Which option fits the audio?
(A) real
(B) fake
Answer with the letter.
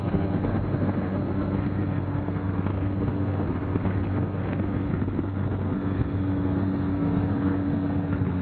B